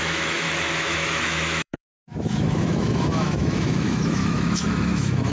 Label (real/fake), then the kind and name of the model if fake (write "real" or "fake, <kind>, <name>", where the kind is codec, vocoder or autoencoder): fake, autoencoder, DAC-VAE